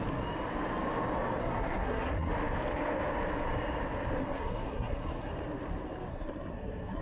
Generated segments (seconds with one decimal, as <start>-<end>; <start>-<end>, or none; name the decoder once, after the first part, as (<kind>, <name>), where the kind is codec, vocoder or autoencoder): 1.4-2.3 (codec, SNAC); 4.2-5.3; 6.1-7.0